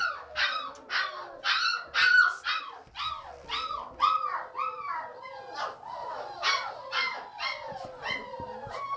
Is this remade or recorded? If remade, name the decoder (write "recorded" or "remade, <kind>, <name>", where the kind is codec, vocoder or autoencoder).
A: recorded